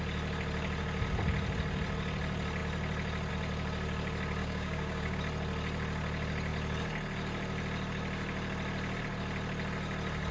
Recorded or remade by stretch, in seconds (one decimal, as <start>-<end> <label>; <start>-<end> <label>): 0.0-4.4 recorded; 4.4-5.2 remade; 5.2-10.3 recorded